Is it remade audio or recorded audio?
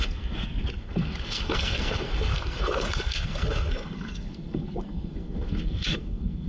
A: remade